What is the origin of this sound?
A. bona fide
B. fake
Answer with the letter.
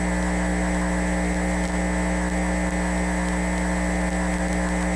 A